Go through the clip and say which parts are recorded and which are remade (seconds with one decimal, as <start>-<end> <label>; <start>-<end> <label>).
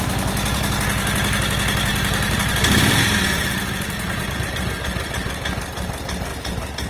0.0-1.9 recorded; 1.9-2.5 remade; 2.5-6.3 recorded; 6.3-6.9 remade